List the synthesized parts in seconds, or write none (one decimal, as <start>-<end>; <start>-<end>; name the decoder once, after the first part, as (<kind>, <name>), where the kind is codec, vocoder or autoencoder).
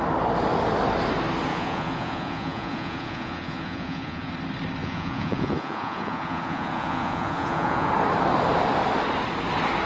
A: 1.5-4.3 (vocoder, Vocos); 4.8-7.9